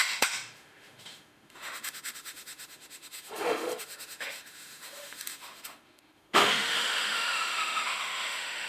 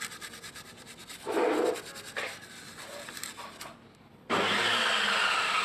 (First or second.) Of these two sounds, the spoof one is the first